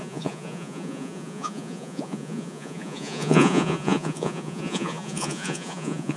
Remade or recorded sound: remade